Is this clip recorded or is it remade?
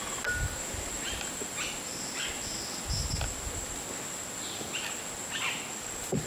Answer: recorded